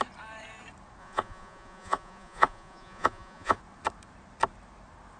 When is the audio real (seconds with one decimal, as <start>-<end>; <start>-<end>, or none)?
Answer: 0.0-1.0; 3.6-5.2